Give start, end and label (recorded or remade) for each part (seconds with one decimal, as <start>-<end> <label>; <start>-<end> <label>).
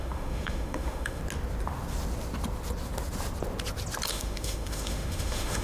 0.0-1.2 remade; 1.2-4.1 recorded; 4.1-5.6 remade